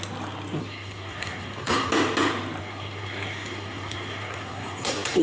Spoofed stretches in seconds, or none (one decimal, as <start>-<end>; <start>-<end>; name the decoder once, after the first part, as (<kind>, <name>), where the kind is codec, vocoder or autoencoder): 0.6-1.9 (codec, SNAC); 2.6-5.2